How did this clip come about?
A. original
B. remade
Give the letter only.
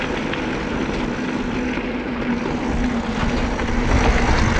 A